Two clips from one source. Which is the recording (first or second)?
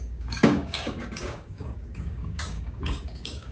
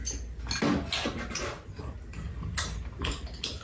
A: second